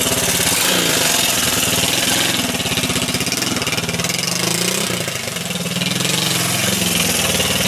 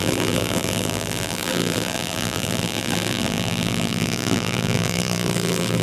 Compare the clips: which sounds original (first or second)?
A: first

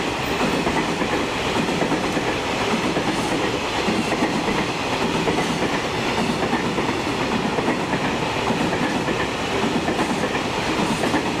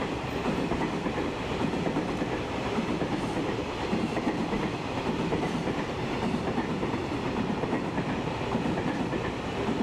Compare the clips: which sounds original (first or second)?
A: first